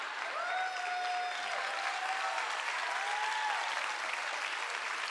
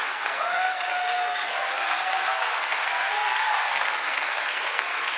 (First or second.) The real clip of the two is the first